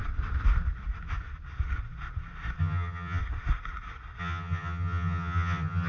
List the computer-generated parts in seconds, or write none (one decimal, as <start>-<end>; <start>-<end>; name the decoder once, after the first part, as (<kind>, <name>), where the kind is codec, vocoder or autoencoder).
2.6-3.2 (vocoder, HiFi-GAN); 4.2-5.9